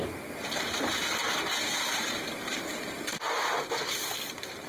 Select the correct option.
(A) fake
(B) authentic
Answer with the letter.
A